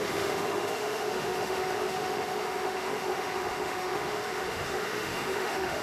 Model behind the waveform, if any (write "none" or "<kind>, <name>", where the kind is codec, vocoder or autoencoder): autoencoder, DAC-VAE